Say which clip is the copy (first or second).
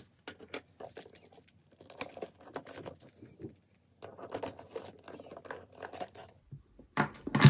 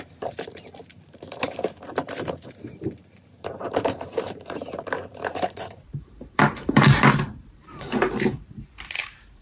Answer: second